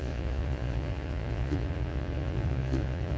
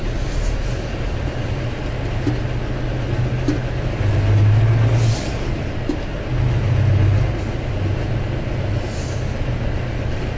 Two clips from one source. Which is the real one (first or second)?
second